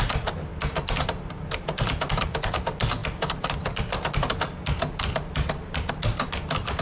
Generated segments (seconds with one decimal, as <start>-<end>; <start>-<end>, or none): none